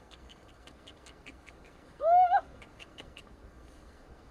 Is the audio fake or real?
fake